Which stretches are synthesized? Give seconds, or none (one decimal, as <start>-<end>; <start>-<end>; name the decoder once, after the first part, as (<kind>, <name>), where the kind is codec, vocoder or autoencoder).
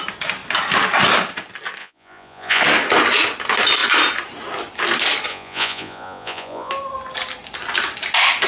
1.8-2.6 (vocoder, Vocos); 5.3-6.7